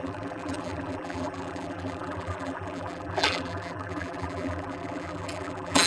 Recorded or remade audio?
remade